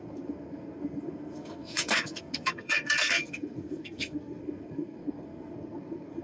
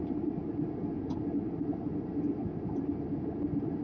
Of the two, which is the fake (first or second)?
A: first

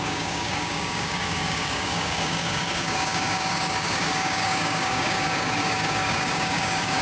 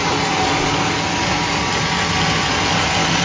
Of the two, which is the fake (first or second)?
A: first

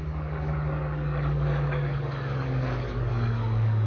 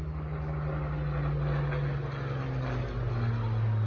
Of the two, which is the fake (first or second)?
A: first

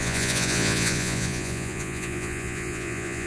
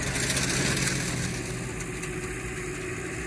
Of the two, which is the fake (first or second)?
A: first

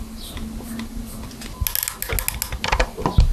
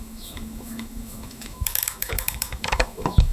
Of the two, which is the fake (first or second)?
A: second